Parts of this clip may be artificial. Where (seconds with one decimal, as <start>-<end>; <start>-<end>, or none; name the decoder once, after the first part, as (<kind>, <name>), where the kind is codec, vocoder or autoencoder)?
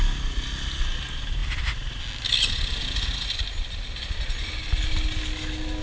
none